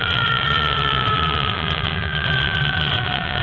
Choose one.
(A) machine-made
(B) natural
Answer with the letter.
A